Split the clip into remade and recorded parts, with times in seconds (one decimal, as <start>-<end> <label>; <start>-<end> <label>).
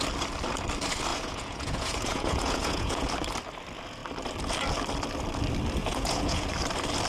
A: 0.0-1.1 recorded; 1.1-3.1 remade; 3.1-5.8 recorded; 5.8-6.5 remade; 6.5-7.1 recorded